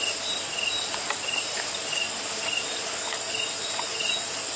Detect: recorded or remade recorded